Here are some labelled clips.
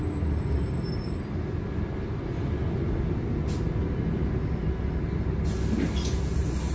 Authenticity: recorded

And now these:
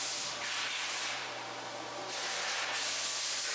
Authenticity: recorded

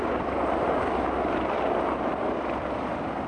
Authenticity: recorded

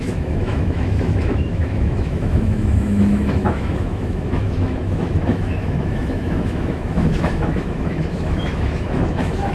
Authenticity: remade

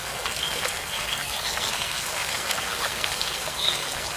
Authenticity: remade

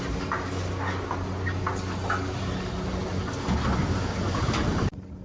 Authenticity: recorded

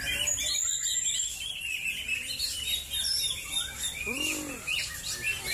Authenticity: remade